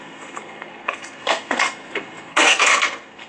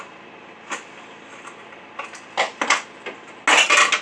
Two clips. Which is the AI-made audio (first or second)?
first